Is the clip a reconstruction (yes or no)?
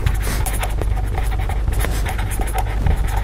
no